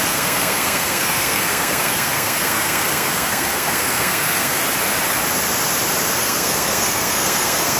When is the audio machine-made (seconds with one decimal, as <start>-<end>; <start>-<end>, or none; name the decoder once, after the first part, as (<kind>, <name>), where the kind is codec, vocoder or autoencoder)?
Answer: 0.0-4.6 (codec, SNAC); 6.2-7.8